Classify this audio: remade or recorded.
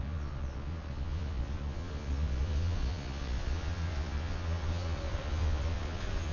remade